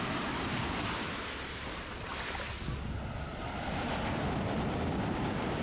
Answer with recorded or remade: recorded